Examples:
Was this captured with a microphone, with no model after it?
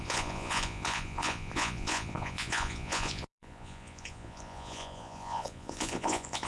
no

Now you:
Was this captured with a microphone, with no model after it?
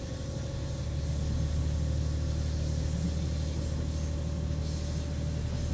yes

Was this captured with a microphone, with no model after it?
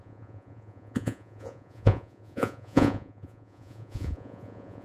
no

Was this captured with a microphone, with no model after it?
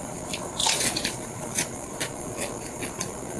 no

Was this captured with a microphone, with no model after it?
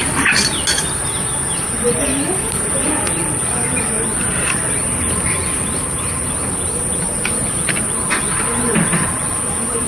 yes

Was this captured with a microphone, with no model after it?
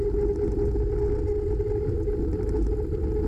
yes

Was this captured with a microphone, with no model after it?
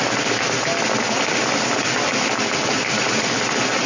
yes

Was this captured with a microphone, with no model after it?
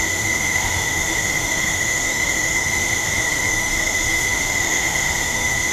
no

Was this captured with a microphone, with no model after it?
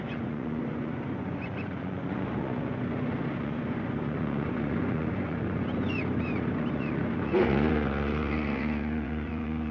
no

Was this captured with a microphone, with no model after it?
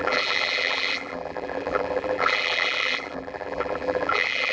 no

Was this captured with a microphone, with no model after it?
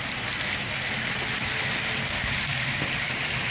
yes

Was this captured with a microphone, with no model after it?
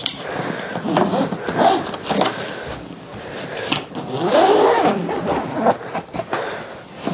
yes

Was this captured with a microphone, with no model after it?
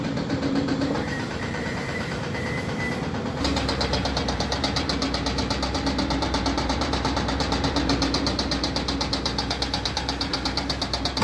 no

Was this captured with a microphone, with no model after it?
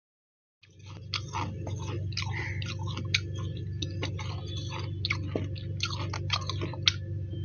yes